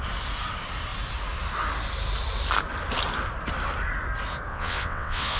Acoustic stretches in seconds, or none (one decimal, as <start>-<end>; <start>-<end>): 0.0-4.5